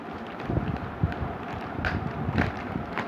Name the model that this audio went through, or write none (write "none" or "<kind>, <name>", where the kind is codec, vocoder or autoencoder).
vocoder, BigVGAN v2